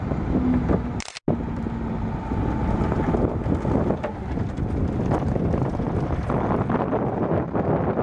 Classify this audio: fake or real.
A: real